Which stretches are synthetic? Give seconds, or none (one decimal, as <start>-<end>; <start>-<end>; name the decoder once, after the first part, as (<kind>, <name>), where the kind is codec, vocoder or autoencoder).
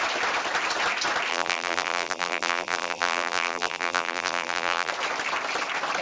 1.3-4.9 (vocoder, BigVGAN v2)